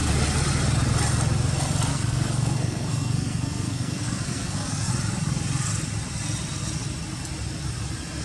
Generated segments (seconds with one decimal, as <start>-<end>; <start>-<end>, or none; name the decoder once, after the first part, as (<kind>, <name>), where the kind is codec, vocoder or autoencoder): 1.9-4.9 (codec, SNAC)